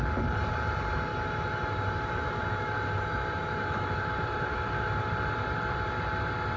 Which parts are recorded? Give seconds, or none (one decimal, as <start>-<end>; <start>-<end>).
0.0-1.1; 5.1-6.6